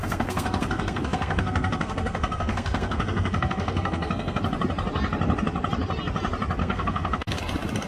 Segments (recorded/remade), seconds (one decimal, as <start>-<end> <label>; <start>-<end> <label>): 0.0-4.4 remade; 4.4-6.6 recorded; 6.6-7.4 remade; 7.4-7.9 recorded